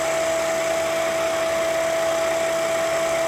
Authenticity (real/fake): real